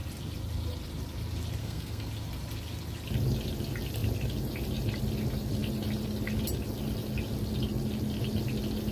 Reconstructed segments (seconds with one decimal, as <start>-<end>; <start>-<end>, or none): 1.6-2.1